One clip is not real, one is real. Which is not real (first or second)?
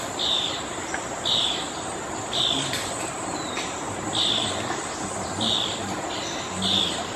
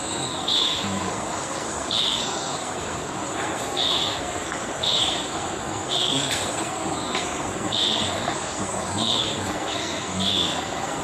second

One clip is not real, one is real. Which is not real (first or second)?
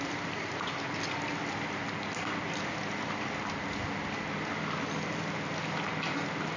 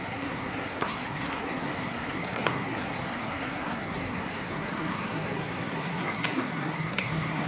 second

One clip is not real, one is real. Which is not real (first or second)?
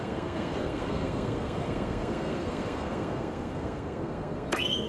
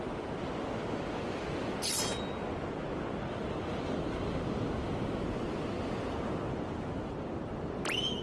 first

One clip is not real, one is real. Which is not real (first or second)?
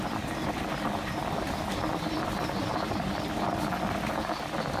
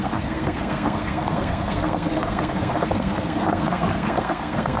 second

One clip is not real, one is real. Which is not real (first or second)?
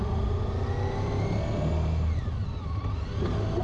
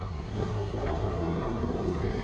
second